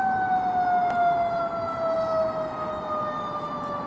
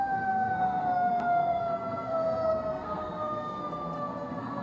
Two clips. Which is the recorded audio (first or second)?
first